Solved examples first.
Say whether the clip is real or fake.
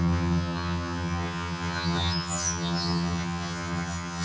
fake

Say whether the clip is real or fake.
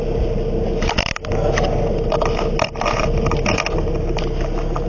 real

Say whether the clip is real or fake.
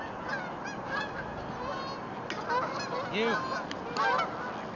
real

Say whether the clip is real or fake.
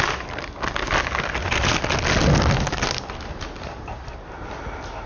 real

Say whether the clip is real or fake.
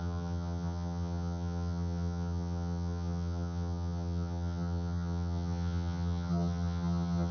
fake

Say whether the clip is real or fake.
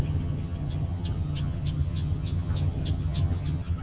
fake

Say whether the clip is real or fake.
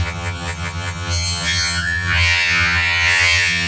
fake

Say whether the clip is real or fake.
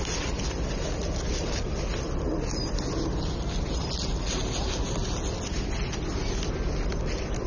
real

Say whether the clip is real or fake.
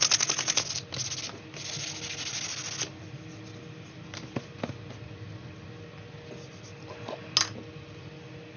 real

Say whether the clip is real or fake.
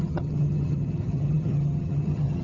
fake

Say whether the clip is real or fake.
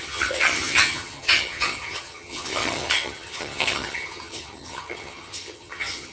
fake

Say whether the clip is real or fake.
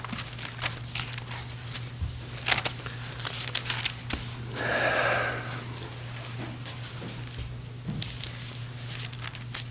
real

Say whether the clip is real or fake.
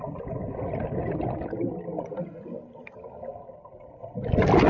real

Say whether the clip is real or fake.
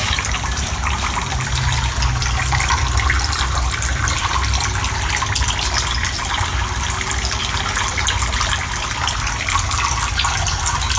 real